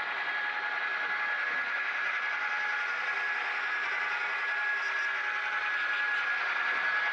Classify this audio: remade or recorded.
recorded